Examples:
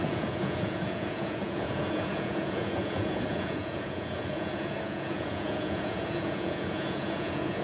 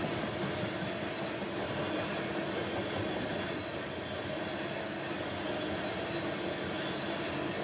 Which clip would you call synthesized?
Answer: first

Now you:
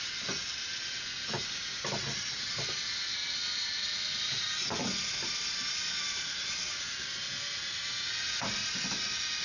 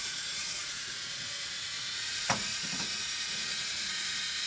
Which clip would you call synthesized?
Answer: second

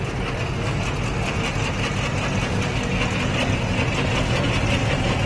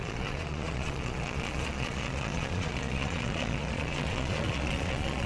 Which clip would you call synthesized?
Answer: second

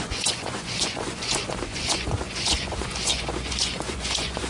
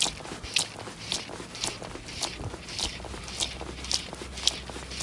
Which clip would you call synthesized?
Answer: first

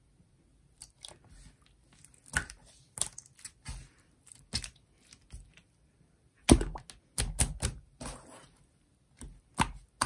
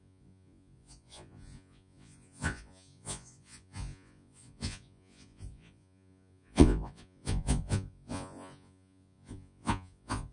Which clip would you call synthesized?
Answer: second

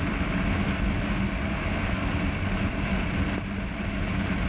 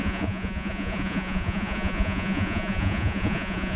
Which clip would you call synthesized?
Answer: second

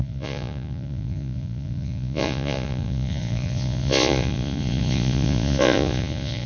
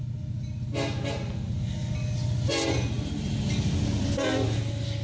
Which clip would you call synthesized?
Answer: first